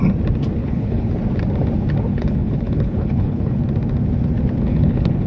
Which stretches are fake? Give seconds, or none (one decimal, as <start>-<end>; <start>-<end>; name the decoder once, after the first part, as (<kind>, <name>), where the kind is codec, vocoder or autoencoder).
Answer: 0.6-1.1 (codec, HILCodec); 2.1-3.6; 4.7-5.3

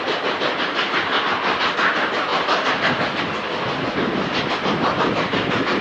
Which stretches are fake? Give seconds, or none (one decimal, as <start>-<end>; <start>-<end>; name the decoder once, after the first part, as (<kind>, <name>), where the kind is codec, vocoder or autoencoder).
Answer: none

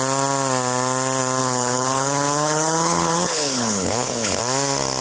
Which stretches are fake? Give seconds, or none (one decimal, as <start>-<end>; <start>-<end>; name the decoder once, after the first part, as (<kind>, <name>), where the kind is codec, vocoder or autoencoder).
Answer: 1.4-4.4 (codec, HILCodec)

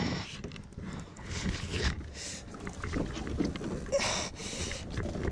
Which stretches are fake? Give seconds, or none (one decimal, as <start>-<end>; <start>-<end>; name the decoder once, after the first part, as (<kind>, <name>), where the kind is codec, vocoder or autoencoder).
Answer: 1.1-1.9 (codec, HILCodec)

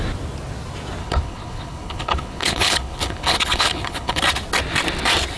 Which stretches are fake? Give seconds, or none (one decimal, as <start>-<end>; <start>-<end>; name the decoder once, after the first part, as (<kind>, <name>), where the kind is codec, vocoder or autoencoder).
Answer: 1.0-4.2 (codec, HILCodec)

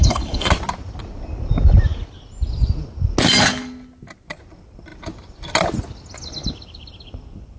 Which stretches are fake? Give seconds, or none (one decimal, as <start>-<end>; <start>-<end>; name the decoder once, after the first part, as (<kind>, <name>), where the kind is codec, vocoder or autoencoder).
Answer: 0.0-0.5 (codec, HILCodec)

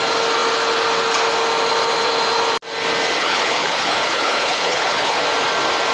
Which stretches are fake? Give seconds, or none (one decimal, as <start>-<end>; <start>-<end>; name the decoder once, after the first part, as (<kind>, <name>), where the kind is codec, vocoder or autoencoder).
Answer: 3.2-5.2 (codec, HILCodec)